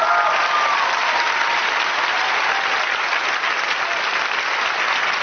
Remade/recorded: recorded